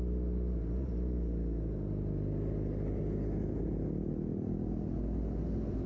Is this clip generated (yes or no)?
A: no